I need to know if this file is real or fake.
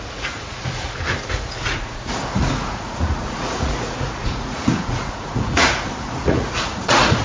fake